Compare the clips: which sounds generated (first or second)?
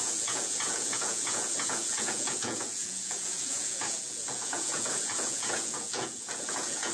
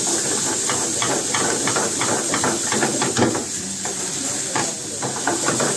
first